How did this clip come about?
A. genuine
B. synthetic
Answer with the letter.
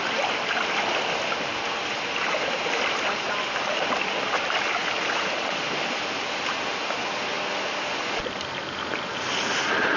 A